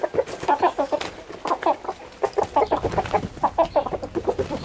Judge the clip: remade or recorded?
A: recorded